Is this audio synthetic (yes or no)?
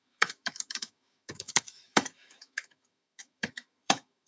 yes